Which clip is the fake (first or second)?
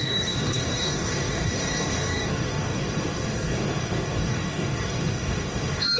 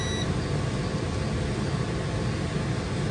first